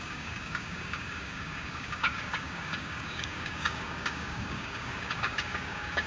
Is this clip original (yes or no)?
no